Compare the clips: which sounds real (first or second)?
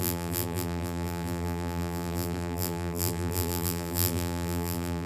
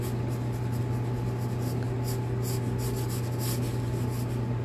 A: second